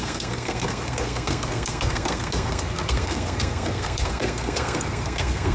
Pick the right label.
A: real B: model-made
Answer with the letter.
B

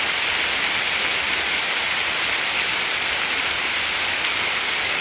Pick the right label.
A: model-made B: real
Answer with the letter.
B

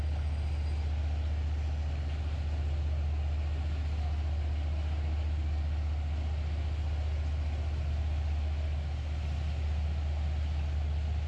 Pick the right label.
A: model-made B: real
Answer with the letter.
B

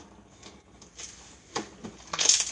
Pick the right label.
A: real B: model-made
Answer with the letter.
A